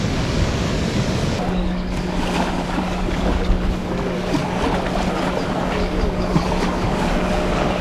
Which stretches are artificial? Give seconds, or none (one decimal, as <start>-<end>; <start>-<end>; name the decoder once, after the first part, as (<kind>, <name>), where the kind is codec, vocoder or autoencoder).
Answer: 0.0-4.4 (codec, DAC); 5.5-7.8